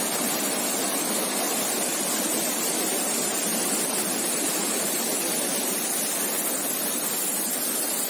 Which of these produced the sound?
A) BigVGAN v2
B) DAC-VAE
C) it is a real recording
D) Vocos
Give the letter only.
C